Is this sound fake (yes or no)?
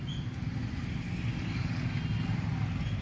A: no